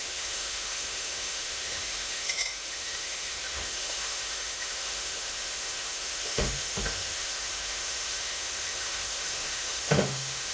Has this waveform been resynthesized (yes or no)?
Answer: yes